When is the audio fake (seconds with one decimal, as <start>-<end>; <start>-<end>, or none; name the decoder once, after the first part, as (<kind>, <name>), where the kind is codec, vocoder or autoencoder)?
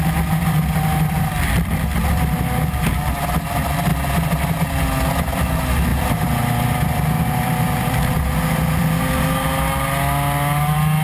5.9-8.1 (vocoder, BigVGAN v2)